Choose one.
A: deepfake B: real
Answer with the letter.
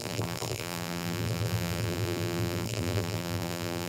A